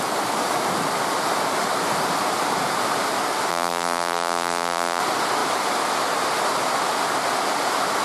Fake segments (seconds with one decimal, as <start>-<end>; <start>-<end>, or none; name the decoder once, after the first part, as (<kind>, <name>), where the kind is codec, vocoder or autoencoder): 3.5-5.0 (vocoder, BigVGAN v2)